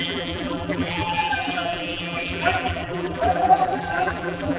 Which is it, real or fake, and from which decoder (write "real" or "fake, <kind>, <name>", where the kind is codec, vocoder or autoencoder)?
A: fake, vocoder, BigVGAN v2